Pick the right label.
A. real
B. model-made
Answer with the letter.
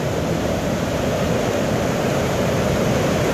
B